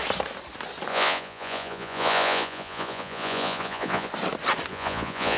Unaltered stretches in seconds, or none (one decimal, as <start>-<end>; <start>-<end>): 0.0-0.9; 4.1-4.7

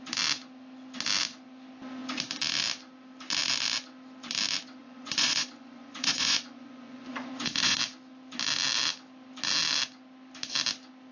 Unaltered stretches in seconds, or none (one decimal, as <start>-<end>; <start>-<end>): 0.0-4.8; 7.8-11.1

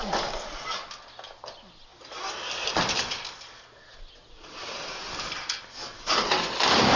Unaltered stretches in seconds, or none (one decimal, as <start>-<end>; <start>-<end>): 0.0-7.0

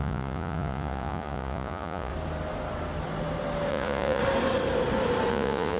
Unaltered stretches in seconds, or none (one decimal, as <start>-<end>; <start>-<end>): 2.1-3.7; 4.2-5.3

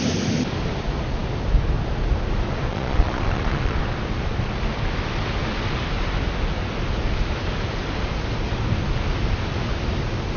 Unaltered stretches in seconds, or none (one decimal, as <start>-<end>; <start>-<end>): 0.0-2.7; 3.8-10.4

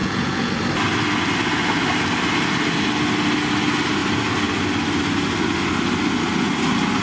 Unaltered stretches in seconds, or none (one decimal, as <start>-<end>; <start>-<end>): 0.5-7.0